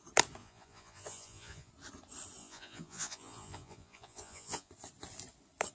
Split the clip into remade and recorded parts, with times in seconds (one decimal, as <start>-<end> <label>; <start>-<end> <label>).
0.0-0.4 recorded; 0.4-1.7 remade; 1.7-2.4 recorded; 2.4-4.7 remade; 4.7-5.7 recorded